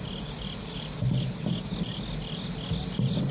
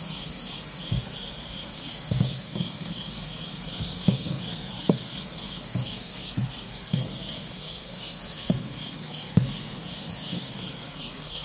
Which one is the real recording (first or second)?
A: first